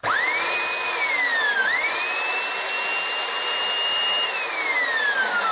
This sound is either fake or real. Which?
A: real